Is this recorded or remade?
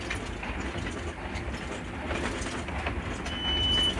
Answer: recorded